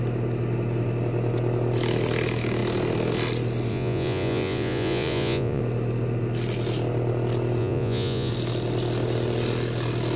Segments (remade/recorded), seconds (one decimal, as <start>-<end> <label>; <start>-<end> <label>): 0.0-3.7 recorded; 3.7-5.6 remade; 5.6-7.6 recorded; 7.6-8.3 remade; 8.3-10.2 recorded